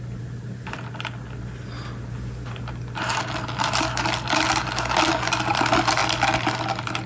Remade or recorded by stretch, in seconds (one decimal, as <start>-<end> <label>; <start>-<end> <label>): 0.0-7.1 recorded